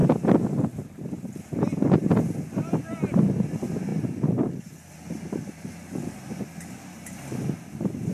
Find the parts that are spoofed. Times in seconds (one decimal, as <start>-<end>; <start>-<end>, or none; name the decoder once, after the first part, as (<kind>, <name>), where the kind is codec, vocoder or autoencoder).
none